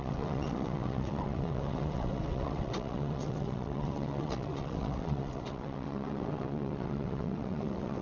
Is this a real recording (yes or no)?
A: no